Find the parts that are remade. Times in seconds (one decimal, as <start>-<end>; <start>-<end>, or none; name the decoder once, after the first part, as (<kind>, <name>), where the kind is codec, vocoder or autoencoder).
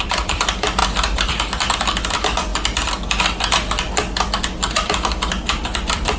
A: 0.0-2.5 (vocoder, BigVGAN v2); 4.4-6.2